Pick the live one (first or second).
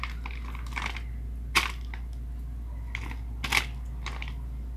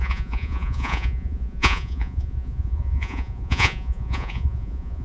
first